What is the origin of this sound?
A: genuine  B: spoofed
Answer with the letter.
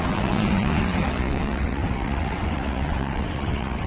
B